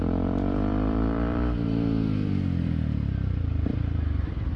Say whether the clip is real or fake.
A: fake